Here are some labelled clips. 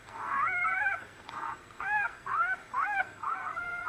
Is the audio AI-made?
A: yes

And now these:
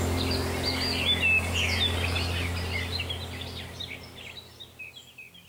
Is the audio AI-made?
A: no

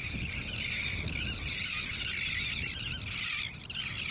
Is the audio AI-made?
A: no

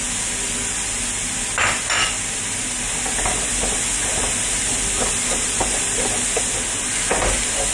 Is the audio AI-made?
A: no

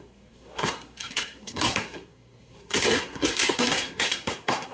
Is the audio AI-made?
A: yes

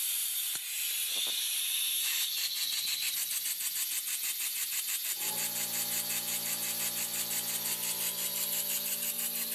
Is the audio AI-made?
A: no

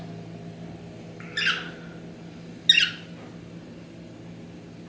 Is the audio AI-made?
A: no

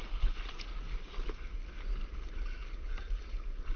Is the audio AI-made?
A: no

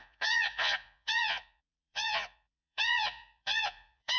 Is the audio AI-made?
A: yes